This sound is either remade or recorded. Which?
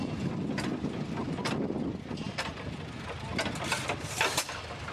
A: recorded